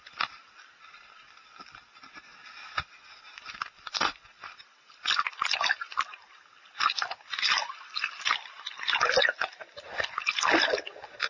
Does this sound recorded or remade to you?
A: recorded